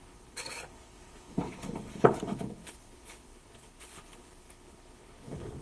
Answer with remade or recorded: remade